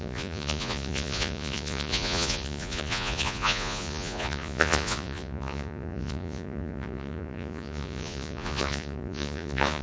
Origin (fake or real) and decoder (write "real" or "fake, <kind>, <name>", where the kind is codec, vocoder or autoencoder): fake, vocoder, Vocos